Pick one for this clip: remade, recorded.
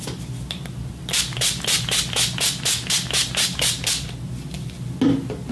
recorded